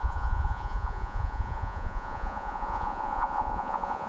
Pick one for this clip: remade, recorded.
remade